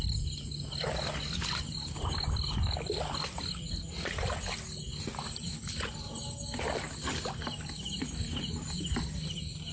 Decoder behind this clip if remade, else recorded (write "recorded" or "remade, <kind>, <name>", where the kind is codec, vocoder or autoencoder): recorded